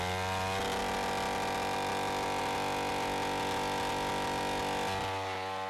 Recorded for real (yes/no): yes